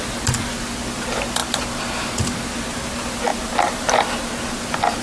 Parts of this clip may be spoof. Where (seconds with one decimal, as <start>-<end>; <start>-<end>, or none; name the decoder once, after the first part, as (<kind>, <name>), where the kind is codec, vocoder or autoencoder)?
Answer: 1.4-2.4 (vocoder, BigVGAN v2); 3.3-4.1